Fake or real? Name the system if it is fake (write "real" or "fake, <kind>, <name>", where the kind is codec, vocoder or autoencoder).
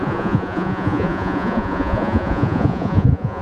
fake, vocoder, Vocos